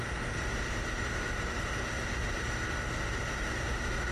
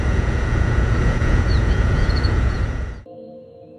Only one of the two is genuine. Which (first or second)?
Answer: first